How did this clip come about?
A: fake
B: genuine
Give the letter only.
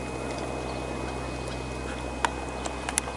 B